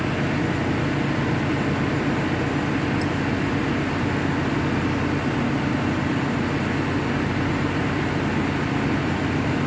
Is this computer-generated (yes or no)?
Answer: no